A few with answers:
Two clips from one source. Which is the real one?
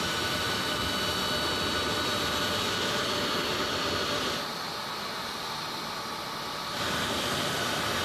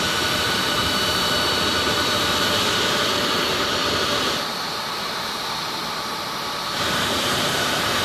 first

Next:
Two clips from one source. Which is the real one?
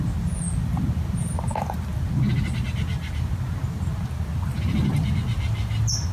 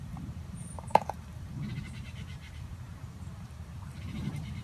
first